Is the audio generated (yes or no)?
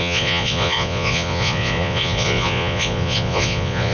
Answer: yes